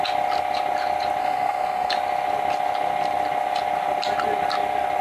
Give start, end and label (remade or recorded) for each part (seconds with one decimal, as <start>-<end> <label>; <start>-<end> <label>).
0.0-1.2 recorded; 1.2-1.9 remade; 1.9-5.0 recorded